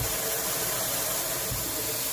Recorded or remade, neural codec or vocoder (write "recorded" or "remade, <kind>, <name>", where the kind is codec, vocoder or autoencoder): recorded